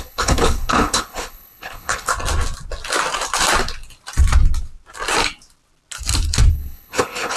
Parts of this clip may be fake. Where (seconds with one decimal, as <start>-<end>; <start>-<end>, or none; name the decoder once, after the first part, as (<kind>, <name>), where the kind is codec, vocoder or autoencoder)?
0.0-2.1 (codec, HILCodec); 6.5-7.4